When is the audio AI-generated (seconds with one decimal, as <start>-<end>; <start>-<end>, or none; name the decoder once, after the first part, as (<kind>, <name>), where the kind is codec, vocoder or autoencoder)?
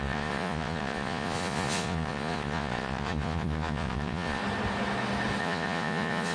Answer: 0.0-4.4 (vocoder, Vocos); 5.4-6.3